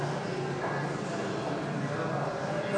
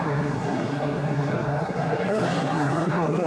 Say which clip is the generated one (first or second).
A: second